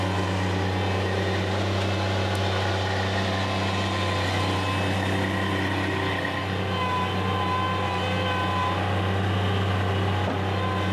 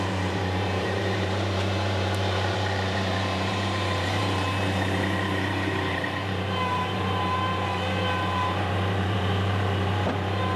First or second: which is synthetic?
second